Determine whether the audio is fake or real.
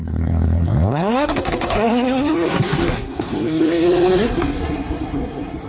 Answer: fake